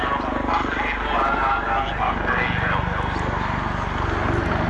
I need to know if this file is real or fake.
real